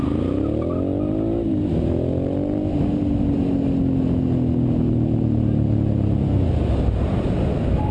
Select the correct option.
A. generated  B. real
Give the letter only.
B